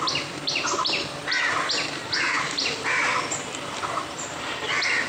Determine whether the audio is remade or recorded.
remade